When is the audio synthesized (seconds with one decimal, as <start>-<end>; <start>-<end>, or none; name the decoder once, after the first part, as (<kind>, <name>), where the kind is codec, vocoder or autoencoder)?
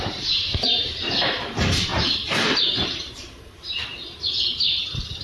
0.0-1.9 (vocoder, BigVGAN v2); 2.9-3.9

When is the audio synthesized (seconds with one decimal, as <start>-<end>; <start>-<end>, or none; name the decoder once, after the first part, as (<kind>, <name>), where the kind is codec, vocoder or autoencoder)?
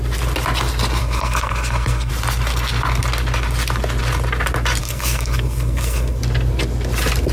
1.0-2.1 (codec, SNAC); 4.8-6.2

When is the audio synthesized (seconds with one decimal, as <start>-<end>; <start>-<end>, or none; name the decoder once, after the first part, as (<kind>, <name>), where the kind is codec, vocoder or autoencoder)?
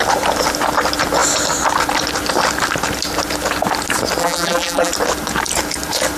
4.2-4.9 (vocoder, BigVGAN v2)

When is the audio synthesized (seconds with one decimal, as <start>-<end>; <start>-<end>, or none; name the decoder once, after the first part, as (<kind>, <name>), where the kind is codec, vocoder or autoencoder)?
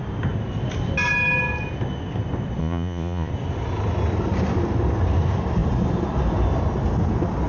2.6-3.3 (vocoder, Vocos)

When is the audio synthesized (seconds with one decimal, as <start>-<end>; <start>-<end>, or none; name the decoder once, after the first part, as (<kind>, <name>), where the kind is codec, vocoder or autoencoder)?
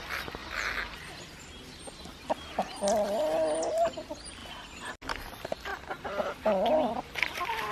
none